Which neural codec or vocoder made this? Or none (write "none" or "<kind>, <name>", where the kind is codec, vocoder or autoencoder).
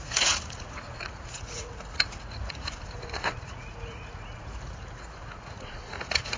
vocoder, Vocos